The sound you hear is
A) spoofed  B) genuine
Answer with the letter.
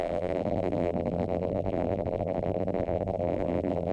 A